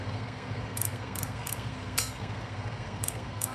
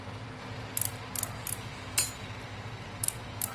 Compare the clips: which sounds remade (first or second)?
first